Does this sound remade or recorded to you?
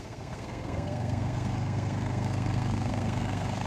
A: remade